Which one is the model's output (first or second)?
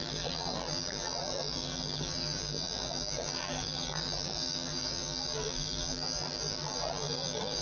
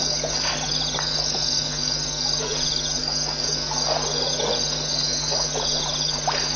first